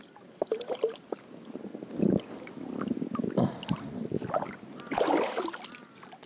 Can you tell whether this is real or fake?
real